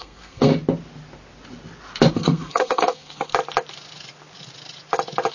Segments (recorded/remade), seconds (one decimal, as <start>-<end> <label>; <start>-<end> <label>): 0.0-0.5 remade; 0.5-2.1 recorded; 2.1-3.3 remade; 3.3-5.3 recorded